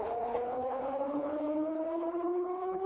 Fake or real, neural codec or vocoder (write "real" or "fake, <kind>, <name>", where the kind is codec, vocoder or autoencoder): fake, codec, HILCodec